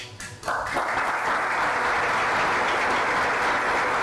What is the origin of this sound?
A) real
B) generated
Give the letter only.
A